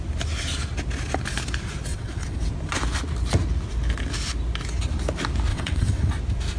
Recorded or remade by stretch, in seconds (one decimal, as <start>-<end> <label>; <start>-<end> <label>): 0.0-1.9 recorded; 1.9-2.5 remade; 2.5-5.5 recorded; 5.5-6.1 remade; 6.1-6.6 recorded